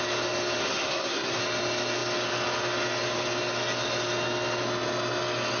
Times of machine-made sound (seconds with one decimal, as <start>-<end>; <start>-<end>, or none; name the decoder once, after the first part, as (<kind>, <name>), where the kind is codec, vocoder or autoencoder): 0.6-1.4 (codec, SNAC)